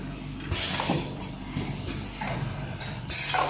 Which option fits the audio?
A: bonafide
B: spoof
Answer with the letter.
A